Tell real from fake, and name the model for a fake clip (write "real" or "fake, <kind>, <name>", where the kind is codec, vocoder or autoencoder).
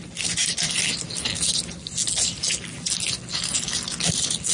real